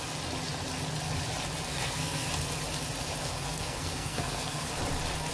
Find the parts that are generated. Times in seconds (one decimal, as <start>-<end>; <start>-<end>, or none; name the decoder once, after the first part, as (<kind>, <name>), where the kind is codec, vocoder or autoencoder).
1.7-2.3 (codec, SNAC); 3.2-4.7